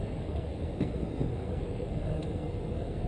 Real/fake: fake